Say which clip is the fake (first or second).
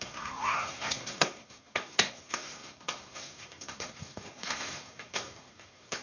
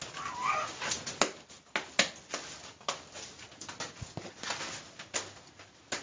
first